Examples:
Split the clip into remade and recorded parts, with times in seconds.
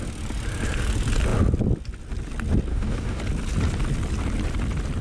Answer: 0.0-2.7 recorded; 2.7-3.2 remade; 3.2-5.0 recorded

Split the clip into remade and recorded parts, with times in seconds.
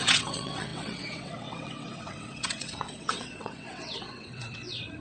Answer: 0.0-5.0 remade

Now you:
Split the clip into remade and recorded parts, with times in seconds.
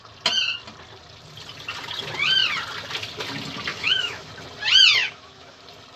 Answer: 0.0-3.7 recorded; 3.7-4.3 remade; 4.3-5.0 recorded; 5.0-5.6 remade; 5.6-6.0 recorded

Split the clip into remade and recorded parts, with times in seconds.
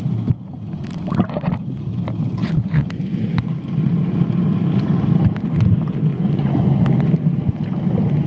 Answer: 0.0-2.4 recorded; 2.4-2.9 remade; 2.9-6.1 recorded; 6.1-6.8 remade; 6.8-8.3 recorded